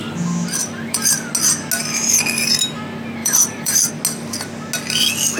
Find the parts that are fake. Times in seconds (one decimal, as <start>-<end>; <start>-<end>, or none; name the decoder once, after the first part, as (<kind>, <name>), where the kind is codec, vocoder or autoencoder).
0.6-1.3 (vocoder, BigVGAN v2); 3.2-3.9

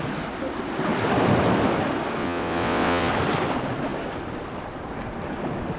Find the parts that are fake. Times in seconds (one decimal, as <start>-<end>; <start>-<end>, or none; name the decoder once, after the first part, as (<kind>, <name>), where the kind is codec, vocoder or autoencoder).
2.2-3.1 (vocoder, WaveNeXt)

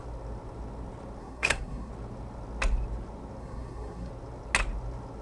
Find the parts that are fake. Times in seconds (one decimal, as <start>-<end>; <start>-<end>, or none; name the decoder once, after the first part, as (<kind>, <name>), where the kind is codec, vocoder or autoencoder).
1.2-1.9 (codec, SNAC); 3.4-4.1

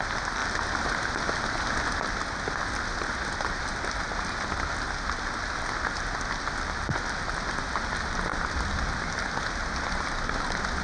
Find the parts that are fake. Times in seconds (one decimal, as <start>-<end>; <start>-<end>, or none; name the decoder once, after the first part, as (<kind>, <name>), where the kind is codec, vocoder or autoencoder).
none

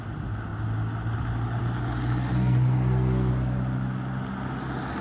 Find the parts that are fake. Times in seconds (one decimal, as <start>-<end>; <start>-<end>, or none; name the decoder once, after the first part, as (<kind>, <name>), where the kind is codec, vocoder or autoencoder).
2.2-3.3 (codec, SNAC)

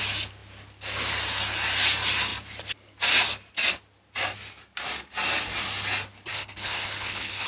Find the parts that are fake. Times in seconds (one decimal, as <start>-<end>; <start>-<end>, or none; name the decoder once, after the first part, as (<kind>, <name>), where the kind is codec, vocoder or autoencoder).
6.3-7.5 (codec, HILCodec)

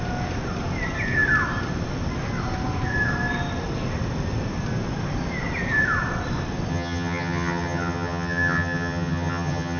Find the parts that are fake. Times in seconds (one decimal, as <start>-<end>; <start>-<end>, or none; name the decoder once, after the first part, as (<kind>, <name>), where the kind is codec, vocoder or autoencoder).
6.7-9.8 (vocoder, HiFi-GAN)

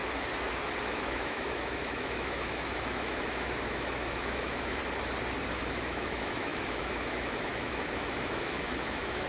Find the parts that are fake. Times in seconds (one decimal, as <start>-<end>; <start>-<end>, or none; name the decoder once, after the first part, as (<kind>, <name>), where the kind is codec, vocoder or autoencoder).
0.8-4.8 (autoencoder, DAC-VAE); 5.5-9.3